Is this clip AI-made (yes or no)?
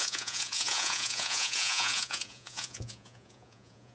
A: yes